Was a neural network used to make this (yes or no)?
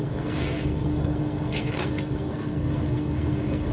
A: yes